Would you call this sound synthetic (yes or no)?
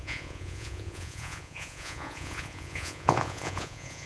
yes